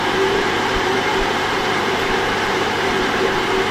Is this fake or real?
fake